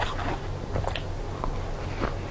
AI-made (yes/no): no